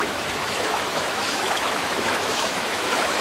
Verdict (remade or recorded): remade